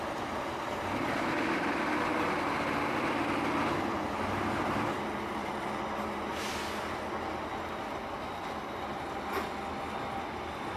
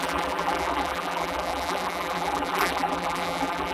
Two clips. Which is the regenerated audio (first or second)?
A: second